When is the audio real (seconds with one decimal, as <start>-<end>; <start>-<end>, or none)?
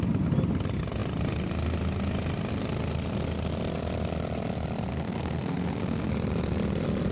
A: 0.0-4.9; 6.1-7.1